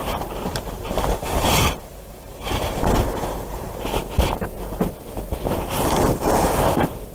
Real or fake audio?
fake